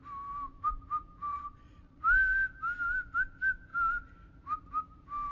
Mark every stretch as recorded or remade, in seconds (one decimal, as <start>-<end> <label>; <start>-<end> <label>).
0.0-1.3 recorded; 1.3-2.0 remade; 2.0-5.3 recorded